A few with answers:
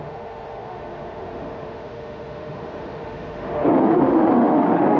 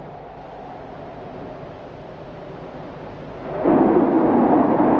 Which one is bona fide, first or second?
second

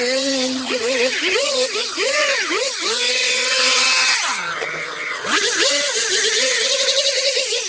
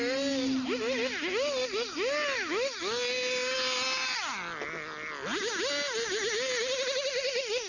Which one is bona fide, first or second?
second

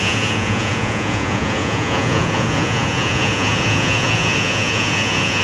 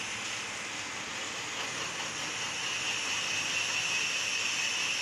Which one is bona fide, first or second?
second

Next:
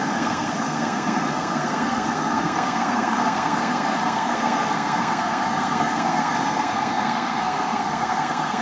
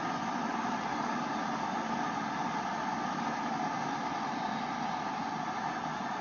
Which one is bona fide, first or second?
second